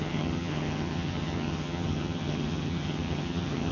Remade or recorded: remade